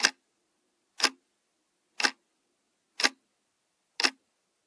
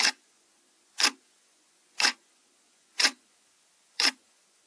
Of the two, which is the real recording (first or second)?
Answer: first